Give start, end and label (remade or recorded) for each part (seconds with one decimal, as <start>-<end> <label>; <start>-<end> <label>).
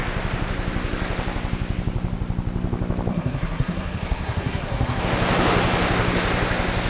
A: 0.0-3.1 recorded; 3.1-5.0 remade; 5.0-6.9 recorded